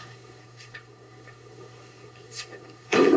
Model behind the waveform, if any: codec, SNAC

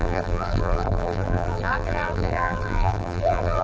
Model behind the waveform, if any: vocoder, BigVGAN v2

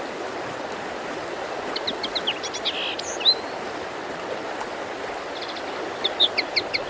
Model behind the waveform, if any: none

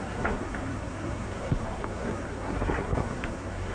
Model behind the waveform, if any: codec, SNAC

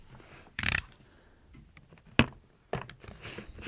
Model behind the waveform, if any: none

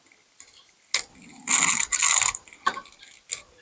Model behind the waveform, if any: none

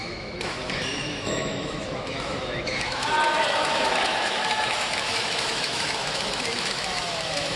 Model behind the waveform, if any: autoencoder, DAC-VAE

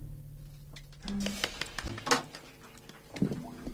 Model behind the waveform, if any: none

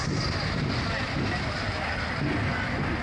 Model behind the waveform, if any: none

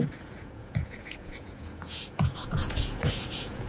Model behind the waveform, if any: vocoder, Vocos